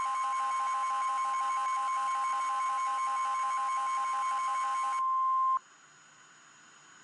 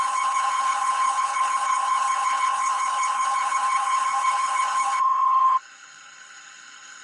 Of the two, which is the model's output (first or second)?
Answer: second